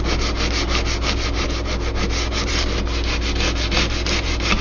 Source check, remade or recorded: recorded